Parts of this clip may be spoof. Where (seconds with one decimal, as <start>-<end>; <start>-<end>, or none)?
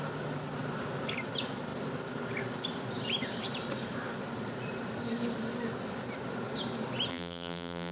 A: 7.1-7.9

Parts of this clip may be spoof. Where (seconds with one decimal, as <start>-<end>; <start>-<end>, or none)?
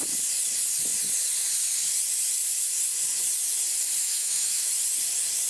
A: 4.0-4.7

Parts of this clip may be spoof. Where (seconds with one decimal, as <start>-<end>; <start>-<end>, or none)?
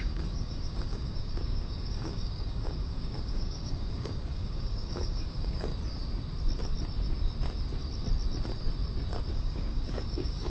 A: 0.0-5.7; 9.3-10.5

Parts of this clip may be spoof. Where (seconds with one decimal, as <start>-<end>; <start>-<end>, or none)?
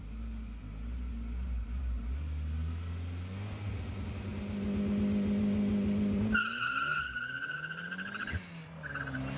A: none